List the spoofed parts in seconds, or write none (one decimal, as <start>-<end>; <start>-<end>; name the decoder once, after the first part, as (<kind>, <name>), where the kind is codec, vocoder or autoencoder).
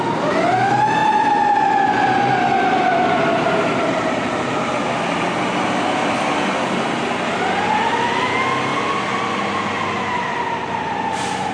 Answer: 3.3-4.8 (vocoder, BigVGAN v2); 10.2-11.5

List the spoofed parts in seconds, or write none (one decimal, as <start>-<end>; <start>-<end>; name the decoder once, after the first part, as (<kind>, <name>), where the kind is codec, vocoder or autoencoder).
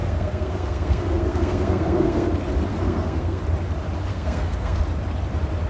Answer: 0.0-2.3 (codec, SNAC); 2.7-3.4; 4.1-4.8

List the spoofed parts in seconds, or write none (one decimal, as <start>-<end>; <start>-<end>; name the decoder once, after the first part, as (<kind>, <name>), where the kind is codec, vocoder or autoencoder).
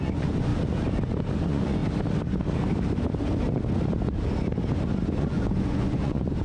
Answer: 0.0-0.5 (vocoder, Vocos); 1.4-1.8; 5.2-6.4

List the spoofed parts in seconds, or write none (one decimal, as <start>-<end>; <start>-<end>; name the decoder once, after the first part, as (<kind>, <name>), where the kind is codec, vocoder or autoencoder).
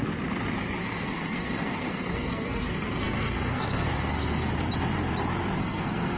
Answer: 0.8-4.5 (codec, SNAC); 5.6-6.2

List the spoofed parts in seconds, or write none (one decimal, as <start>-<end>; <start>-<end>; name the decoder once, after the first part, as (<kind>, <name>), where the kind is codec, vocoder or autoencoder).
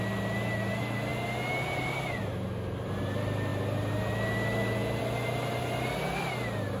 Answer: none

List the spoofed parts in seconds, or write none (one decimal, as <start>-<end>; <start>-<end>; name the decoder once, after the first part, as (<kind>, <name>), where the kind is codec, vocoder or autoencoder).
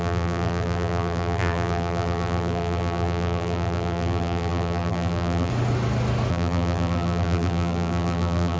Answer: 0.0-5.5 (vocoder, BigVGAN v2); 6.3-8.6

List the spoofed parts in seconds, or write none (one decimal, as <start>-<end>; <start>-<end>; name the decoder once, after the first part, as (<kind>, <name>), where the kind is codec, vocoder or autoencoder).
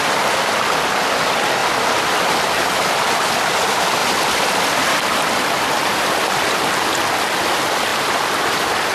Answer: 1.6-3.1 (vocoder, BigVGAN v2); 4.0-6.1; 7.9-8.4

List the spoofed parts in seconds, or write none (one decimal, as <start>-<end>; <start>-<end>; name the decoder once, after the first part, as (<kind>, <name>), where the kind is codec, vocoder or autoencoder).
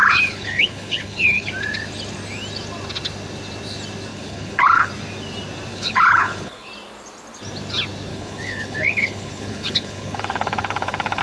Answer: 0.0-1.5 (codec, HILCodec); 4.1-4.9; 5.7-6.7; 8.1-11.2